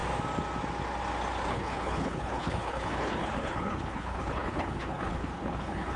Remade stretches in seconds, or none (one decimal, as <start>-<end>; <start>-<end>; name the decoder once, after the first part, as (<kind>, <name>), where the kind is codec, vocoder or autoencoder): 1.5-6.0 (codec, HILCodec)